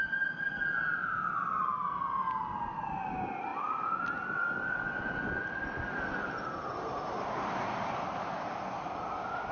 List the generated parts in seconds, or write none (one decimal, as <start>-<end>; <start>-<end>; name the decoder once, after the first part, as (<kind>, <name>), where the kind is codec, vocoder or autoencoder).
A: none